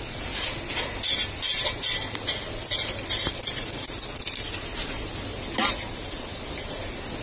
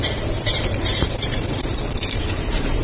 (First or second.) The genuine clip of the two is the first